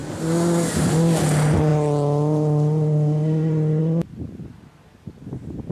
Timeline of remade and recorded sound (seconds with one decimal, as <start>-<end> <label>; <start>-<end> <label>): 0.0-5.7 recorded